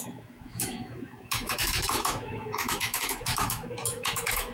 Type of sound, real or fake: fake